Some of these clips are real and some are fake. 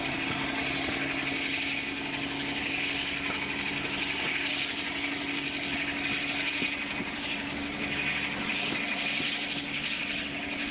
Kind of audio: real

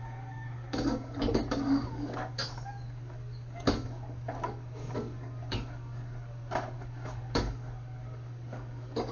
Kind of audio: fake